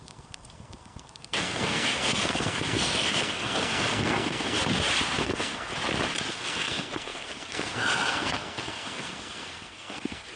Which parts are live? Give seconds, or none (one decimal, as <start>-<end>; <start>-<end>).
4.6-5.2; 5.7-6.3